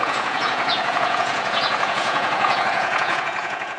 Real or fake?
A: fake